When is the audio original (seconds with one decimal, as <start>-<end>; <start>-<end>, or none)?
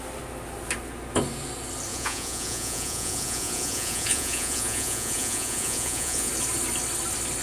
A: 0.0-1.9; 6.3-7.4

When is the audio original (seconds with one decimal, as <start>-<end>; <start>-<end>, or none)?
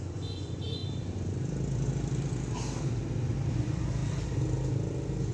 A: 0.8-3.5; 4.0-5.3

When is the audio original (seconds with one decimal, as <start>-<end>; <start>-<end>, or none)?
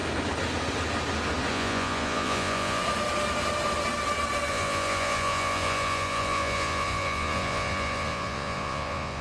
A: 0.0-1.5; 2.8-4.5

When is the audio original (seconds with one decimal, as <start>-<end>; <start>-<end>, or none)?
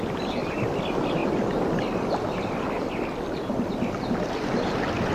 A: 0.0-5.1